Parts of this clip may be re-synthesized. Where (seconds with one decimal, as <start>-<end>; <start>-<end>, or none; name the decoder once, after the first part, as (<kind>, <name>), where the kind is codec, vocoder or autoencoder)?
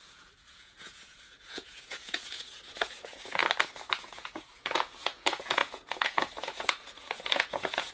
0.0-3.4 (vocoder, Vocos); 4.1-7.9